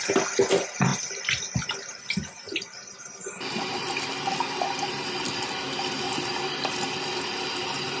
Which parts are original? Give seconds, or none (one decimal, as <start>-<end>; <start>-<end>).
0.0-8.0